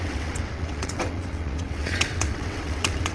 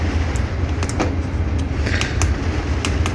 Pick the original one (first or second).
second